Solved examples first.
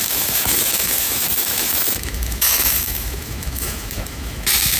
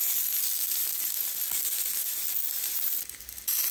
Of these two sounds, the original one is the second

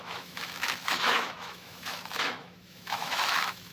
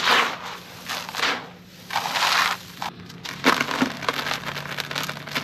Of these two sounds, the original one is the second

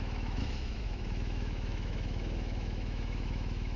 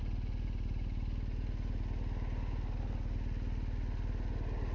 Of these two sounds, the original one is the second